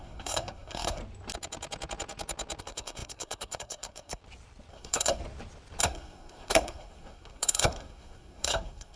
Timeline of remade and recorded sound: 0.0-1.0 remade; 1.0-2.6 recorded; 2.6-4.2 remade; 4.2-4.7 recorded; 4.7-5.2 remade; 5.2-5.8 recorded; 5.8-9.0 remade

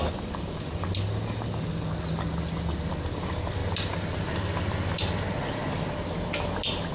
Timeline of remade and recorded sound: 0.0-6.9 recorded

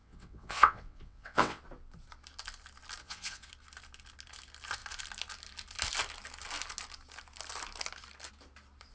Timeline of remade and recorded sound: 0.0-1.6 remade; 1.6-3.0 recorded; 3.0-3.5 remade; 3.5-8.9 recorded

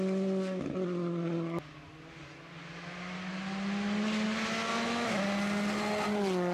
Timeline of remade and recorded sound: 0.0-4.7 recorded; 4.7-5.2 remade; 5.2-6.5 recorded

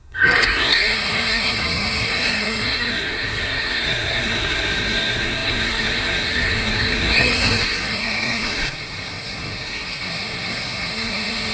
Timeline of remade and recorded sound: 0.0-11.5 remade

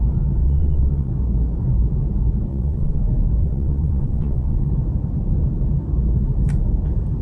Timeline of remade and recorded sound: 0.0-0.4 recorded; 0.4-1.1 remade; 1.1-2.5 recorded; 2.5-3.0 remade; 3.0-3.4 recorded; 3.4-4.7 remade; 4.7-7.2 recorded

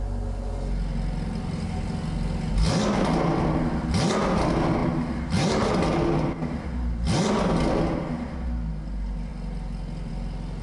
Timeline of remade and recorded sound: 0.0-10.6 recorded

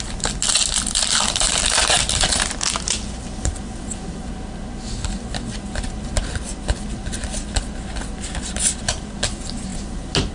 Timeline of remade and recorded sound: 0.0-10.3 recorded